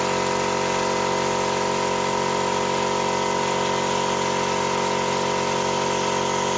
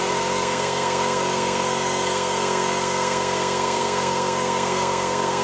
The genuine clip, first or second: first